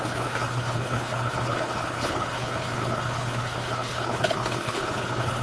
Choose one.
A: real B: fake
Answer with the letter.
B